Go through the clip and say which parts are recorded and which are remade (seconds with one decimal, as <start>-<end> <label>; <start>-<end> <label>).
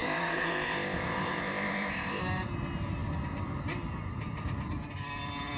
0.0-2.2 remade; 2.2-5.6 recorded